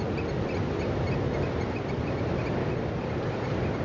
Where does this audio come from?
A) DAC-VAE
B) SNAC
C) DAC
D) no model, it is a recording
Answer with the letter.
D